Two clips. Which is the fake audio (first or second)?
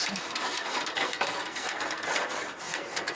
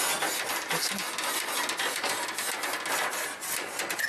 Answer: first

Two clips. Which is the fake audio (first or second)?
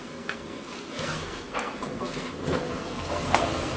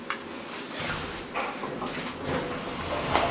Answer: first